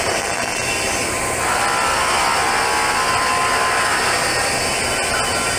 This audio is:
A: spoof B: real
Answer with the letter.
B